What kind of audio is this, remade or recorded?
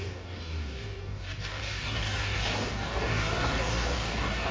remade